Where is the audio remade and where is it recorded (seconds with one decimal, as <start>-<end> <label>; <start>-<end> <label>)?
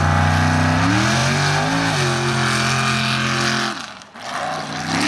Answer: 0.0-5.1 recorded